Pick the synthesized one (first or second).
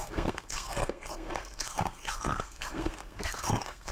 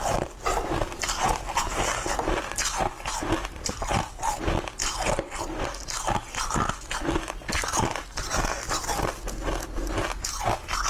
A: first